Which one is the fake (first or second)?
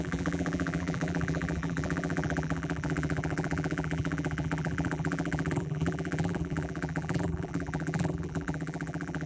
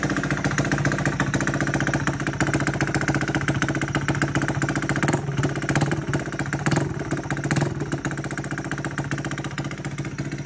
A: first